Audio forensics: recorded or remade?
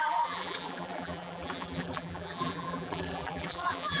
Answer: remade